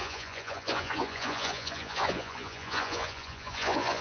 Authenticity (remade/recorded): remade